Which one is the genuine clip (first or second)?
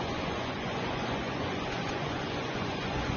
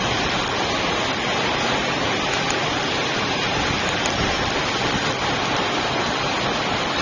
second